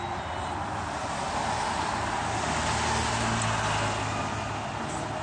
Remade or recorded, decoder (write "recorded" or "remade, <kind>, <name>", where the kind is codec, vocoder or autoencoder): recorded